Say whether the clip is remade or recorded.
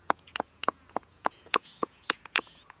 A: remade